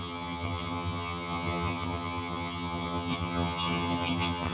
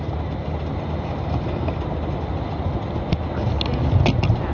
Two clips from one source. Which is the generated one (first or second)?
first